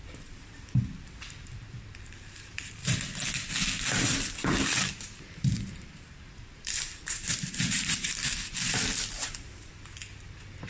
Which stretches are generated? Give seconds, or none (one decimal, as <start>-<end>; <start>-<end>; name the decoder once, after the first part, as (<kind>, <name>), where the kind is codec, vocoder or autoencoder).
0.0-2.8 (vocoder, BigVGAN v2); 5.3-8.2; 9.1-10.7